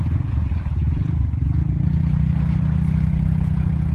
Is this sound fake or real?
fake